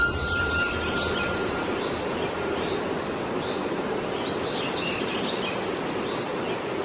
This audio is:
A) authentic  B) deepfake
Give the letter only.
A